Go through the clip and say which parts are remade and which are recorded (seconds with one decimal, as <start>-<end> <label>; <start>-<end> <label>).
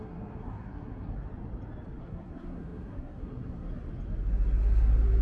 0.0-1.2 remade; 1.2-2.0 recorded; 2.0-3.7 remade; 3.7-5.2 recorded